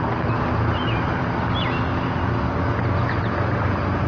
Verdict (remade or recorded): recorded